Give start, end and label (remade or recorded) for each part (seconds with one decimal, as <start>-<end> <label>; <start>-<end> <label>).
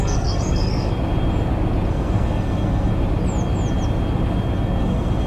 0.0-0.9 remade; 0.9-1.9 recorded; 1.9-2.9 remade; 2.9-4.8 recorded; 4.8-5.3 remade